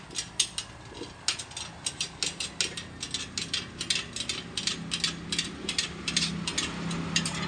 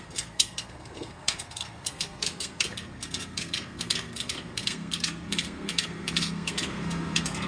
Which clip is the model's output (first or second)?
second